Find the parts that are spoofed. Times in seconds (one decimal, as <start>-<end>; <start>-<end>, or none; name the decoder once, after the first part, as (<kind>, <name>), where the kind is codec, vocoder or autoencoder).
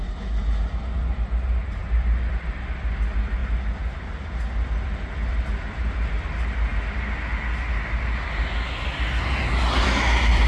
none